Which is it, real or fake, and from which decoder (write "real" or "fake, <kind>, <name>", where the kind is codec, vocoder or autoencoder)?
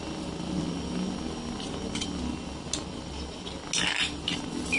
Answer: real